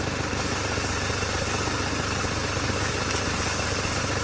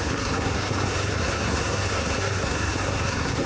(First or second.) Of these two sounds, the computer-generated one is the second